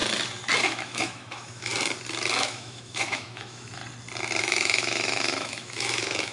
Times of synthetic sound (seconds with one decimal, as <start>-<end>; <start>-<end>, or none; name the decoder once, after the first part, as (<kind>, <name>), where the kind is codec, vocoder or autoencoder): 0.6-1.7 (autoencoder, DAC-VAE); 2.4-3.8; 4.4-6.3